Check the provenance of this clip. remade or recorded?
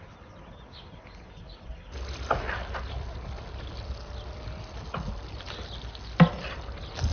recorded